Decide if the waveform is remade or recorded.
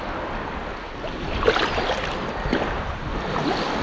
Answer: recorded